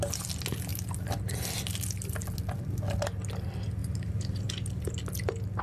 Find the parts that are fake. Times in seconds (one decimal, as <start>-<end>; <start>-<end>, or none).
3.8-4.5